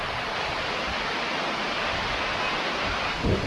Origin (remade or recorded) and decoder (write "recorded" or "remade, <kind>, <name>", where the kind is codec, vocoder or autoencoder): recorded